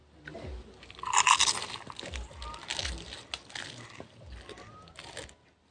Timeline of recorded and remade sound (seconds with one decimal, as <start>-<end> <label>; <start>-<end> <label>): 0.0-5.7 recorded